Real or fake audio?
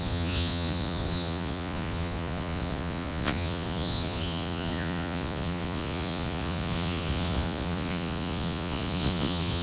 fake